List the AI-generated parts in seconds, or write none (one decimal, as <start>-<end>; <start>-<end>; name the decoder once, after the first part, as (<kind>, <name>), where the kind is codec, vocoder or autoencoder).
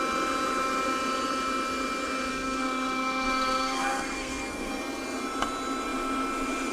2.3-4.8 (codec, SNAC)